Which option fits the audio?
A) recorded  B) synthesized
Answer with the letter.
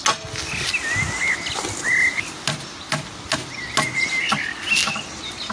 A